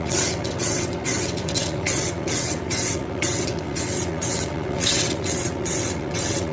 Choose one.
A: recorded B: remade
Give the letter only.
B